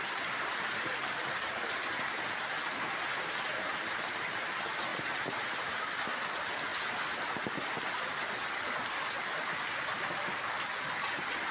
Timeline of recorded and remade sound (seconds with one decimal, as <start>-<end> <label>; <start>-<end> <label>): 0.0-4.9 recorded; 4.9-5.8 remade; 5.8-11.5 recorded